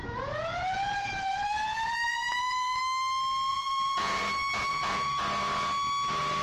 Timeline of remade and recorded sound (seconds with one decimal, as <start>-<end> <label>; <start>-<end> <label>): 0.0-2.8 remade; 2.8-3.5 recorded; 3.5-4.2 remade; 4.2-4.7 recorded; 4.7-5.2 remade; 5.2-6.4 recorded